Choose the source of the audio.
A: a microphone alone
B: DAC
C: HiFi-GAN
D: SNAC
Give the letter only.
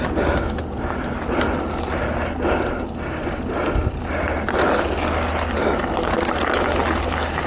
A